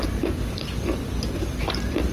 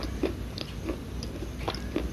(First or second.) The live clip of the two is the second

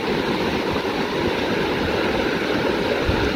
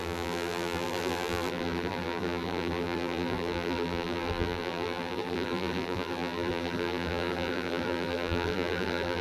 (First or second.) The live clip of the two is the first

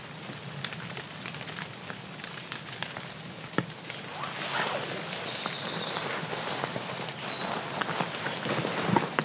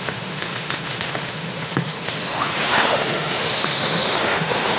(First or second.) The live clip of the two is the first